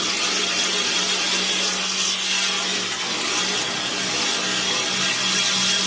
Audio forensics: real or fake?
real